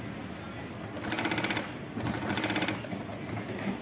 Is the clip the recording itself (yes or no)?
yes